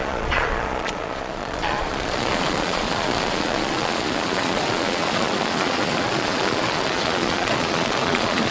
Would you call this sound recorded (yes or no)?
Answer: no